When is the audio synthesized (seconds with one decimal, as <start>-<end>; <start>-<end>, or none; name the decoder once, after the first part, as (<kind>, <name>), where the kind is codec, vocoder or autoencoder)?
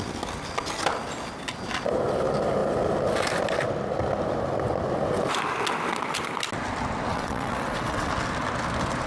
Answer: 7.1-8.1 (vocoder, WaveNeXt)